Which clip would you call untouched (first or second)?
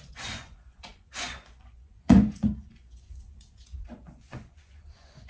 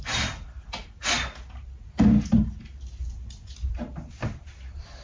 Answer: second